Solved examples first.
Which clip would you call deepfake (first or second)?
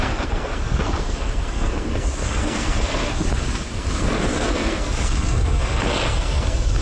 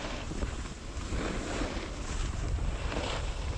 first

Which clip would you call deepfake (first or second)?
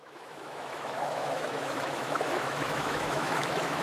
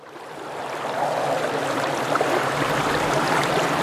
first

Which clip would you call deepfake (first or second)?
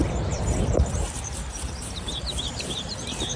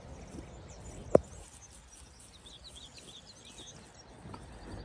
first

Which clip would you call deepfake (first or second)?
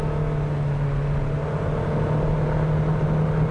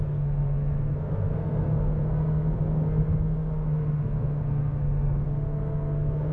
second